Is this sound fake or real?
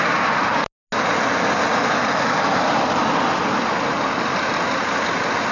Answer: real